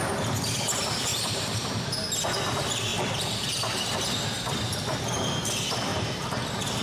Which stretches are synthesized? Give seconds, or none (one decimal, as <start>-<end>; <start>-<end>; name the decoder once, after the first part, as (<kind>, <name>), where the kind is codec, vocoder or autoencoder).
1.1-1.7 (vocoder, BigVGAN v2)